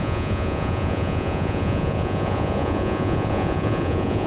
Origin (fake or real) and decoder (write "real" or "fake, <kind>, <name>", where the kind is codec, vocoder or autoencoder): fake, vocoder, Vocos